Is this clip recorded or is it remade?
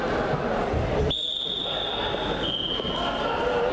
recorded